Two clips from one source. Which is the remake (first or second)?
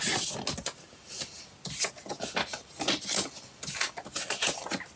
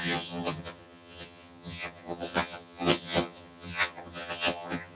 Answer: second